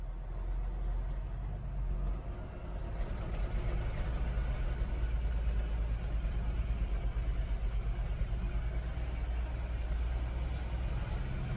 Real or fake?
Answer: real